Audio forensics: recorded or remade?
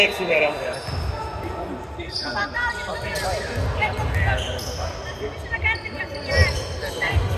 recorded